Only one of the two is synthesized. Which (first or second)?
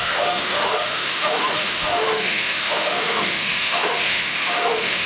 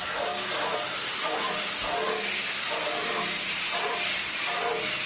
first